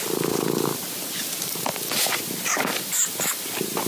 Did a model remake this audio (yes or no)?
no